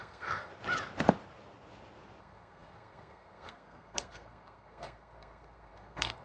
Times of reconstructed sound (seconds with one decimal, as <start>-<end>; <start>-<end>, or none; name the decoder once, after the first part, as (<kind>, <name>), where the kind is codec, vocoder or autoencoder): 0.0-0.5 (codec, SNAC); 2.2-6.2